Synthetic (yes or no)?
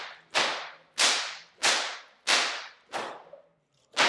no